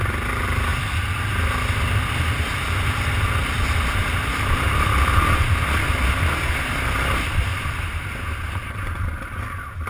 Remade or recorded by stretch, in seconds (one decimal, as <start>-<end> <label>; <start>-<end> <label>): 0.0-7.5 recorded; 7.5-9.4 remade; 9.4-9.9 recorded